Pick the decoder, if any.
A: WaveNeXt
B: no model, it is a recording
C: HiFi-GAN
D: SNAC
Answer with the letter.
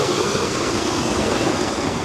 D